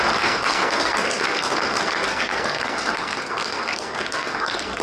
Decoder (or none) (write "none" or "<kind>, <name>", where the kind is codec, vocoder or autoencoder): codec, SNAC